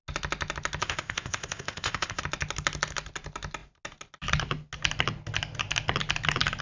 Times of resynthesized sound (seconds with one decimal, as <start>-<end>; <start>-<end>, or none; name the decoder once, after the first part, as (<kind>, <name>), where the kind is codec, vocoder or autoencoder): 0.8-2.2 (codec, ZipCodec)